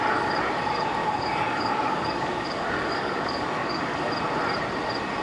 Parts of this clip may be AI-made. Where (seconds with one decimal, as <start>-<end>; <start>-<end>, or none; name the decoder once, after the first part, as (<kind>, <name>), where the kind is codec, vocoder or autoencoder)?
1.0-4.1 (codec, DAC)